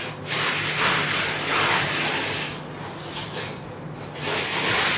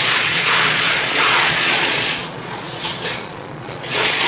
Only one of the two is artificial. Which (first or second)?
second